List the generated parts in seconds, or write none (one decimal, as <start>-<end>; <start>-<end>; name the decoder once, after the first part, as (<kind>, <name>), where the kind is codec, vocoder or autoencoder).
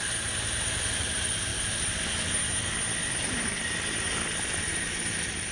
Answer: none